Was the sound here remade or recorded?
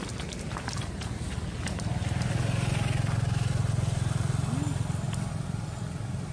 recorded